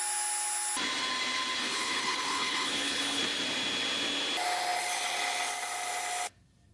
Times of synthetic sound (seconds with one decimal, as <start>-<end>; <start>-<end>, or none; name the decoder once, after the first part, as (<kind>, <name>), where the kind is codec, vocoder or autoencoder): 1.6-3.2 (codec, HILCodec)